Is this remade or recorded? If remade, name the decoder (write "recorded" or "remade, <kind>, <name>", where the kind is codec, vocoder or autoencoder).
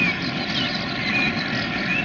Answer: recorded